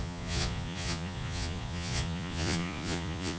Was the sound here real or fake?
fake